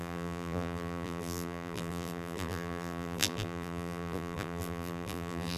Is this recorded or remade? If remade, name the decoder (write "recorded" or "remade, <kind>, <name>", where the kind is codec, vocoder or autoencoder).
remade, vocoder, BigVGAN v2